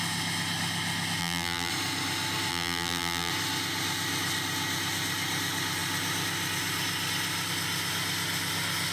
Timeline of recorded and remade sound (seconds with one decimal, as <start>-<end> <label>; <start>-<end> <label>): 0.0-1.2 recorded; 1.2-1.7 remade; 1.7-2.5 recorded; 2.5-3.3 remade; 3.3-8.9 recorded